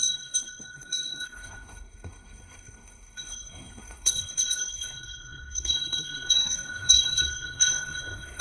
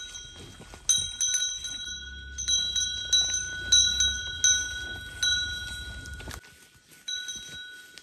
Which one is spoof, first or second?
first